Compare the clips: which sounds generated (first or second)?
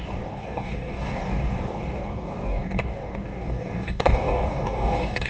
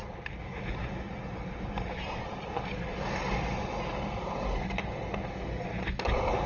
first